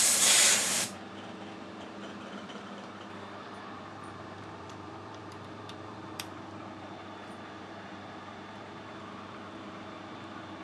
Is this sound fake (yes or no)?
yes